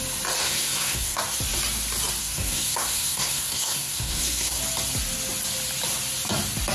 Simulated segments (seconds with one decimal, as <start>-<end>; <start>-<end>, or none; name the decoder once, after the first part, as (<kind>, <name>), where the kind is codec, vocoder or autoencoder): 0.4-1.2 (codec, SNAC); 2.2-4.6